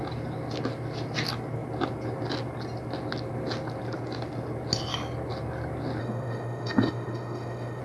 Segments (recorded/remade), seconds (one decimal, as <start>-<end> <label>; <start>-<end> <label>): 0.0-6.0 recorded; 6.0-7.8 remade